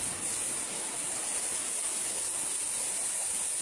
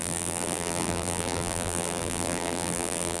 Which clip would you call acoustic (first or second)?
first